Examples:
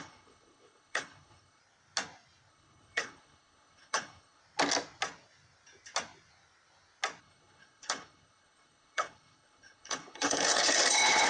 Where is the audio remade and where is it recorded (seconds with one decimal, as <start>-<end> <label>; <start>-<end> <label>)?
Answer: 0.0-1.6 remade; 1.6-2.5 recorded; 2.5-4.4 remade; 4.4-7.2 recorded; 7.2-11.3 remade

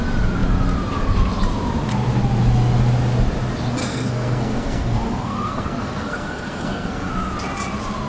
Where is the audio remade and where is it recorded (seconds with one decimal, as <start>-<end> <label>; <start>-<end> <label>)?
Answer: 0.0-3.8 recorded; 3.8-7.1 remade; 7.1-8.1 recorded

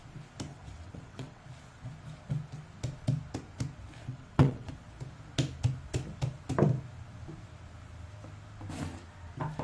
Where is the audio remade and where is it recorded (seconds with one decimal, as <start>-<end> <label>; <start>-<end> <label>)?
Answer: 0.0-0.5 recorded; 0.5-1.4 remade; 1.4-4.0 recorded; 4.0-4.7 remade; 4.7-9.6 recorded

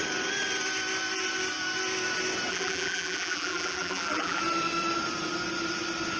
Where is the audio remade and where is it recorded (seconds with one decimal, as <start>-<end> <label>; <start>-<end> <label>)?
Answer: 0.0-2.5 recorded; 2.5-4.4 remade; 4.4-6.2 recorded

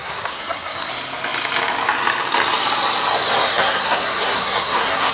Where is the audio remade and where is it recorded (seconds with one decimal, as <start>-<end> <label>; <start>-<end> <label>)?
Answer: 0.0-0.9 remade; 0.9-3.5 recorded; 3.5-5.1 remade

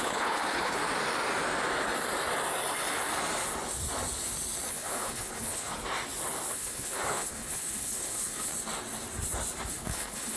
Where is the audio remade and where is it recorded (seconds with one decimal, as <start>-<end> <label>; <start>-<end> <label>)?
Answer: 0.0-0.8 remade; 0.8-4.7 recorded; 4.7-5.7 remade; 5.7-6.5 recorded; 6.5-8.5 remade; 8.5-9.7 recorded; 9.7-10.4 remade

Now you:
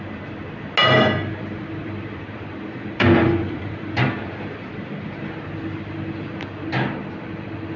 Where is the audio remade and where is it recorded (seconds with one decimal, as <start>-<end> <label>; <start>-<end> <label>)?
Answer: 0.0-0.8 recorded; 0.8-5.3 remade; 5.3-7.8 recorded

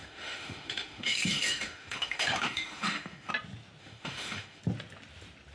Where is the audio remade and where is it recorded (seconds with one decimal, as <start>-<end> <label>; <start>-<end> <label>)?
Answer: 0.0-3.3 remade; 3.3-3.8 recorded; 3.8-4.6 remade; 4.6-5.5 recorded